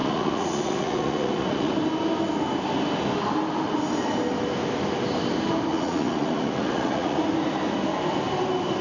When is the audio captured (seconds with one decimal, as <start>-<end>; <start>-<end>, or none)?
1.7-5.7; 7.2-8.8